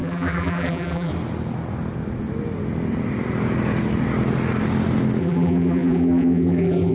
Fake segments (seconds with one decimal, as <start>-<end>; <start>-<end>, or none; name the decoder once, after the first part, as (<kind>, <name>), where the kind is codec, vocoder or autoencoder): 0.0-1.1 (vocoder, BigVGAN v2); 5.2-6.9